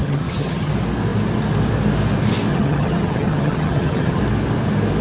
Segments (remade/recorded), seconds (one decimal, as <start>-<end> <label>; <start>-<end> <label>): 0.0-0.7 remade; 0.7-2.5 recorded; 2.5-4.2 remade; 4.2-5.0 recorded